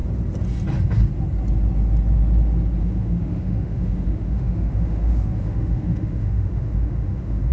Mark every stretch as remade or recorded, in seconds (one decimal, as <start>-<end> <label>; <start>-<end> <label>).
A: 0.0-2.8 recorded; 2.8-7.5 remade